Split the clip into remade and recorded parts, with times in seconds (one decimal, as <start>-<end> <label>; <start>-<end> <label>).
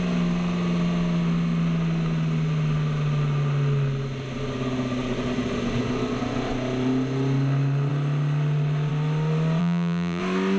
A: 0.0-9.6 recorded; 9.6-10.2 remade; 10.2-10.6 recorded